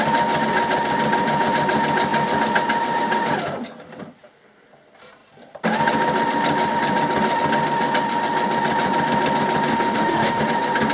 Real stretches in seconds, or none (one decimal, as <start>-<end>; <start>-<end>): 0.0-9.7; 10.4-10.9